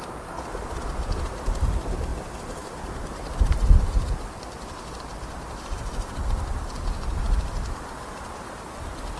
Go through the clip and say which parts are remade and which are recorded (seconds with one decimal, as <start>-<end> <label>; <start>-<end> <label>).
0.0-2.1 recorded; 2.1-7.2 remade; 7.2-9.2 recorded